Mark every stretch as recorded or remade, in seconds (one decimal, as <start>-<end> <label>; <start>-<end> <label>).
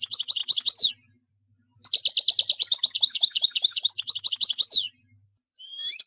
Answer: 0.0-6.1 recorded